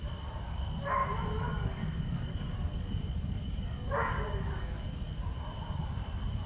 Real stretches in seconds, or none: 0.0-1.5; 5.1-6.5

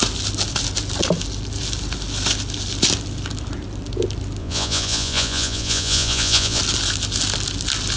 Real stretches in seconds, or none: 0.0-4.4; 6.6-8.0

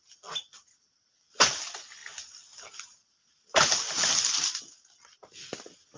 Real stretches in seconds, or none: 0.0-6.0

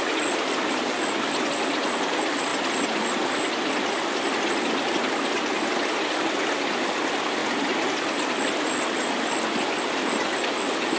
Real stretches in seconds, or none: 0.0-11.0

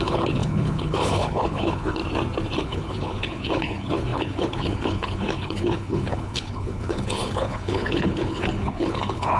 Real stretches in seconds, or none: 2.0-2.6

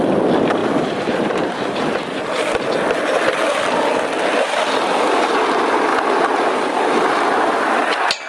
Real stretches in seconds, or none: 0.0-0.6; 2.2-8.3

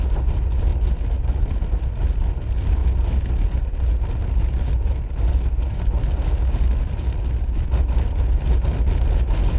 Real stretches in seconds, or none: 0.0-9.6